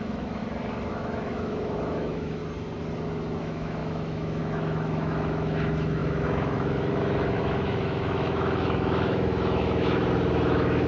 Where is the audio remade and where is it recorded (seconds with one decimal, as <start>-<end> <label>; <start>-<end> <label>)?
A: 0.0-0.4 remade; 0.4-0.9 recorded; 0.9-2.4 remade; 2.4-3.4 recorded; 3.4-10.9 remade